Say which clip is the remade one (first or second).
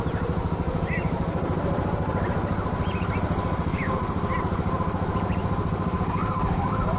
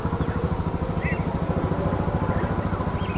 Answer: first